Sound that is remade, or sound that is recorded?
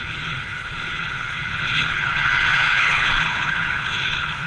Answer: remade